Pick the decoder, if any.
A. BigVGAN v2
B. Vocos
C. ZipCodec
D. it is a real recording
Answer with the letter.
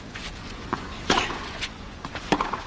B